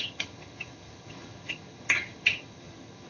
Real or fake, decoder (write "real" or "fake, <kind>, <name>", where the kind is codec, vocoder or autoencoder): fake, vocoder, HiFi-GAN